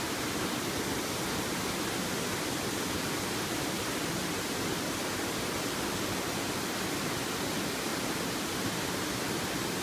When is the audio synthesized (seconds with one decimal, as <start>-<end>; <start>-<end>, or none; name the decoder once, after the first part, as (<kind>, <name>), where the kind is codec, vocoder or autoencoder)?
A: none